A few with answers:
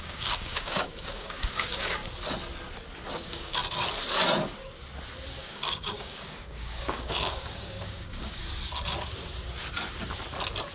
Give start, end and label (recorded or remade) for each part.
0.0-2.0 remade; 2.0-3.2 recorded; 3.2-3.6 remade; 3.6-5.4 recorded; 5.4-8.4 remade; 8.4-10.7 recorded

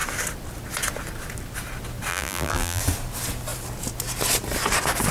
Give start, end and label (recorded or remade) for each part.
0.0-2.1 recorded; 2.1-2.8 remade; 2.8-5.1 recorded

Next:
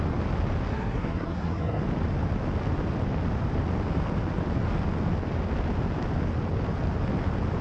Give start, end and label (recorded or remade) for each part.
0.0-0.7 recorded; 0.7-1.8 remade; 1.8-7.6 recorded